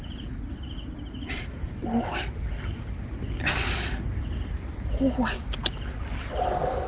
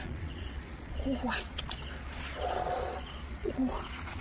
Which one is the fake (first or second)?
second